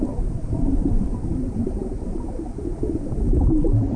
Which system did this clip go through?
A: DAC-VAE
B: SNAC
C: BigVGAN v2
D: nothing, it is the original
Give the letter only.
C